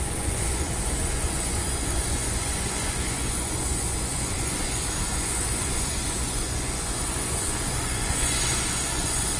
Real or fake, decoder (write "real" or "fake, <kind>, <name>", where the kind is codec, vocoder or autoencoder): fake, vocoder, Vocos